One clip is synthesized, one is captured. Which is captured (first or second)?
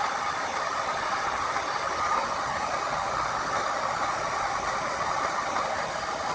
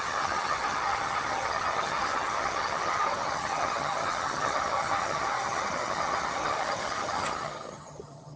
first